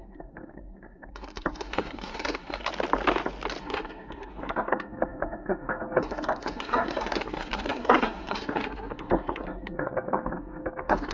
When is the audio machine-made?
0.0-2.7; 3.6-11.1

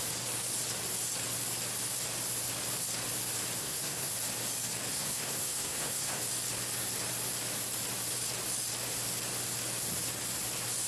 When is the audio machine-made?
3.6-4.1; 4.9-6.2